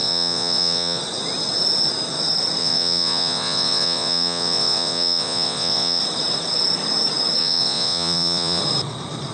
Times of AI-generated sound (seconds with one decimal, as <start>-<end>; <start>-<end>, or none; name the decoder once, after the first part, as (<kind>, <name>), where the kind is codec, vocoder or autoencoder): 0.0-1.0 (vocoder, Vocos); 2.6-6.0; 7.4-8.6